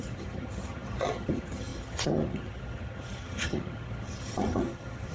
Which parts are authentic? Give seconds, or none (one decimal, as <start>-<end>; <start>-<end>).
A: none